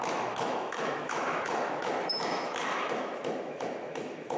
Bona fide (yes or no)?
no